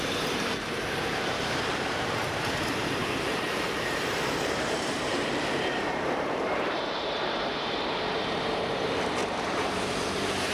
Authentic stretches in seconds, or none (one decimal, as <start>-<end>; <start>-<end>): none